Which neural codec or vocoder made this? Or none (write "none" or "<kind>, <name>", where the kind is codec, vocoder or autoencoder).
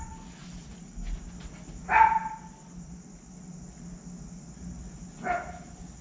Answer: none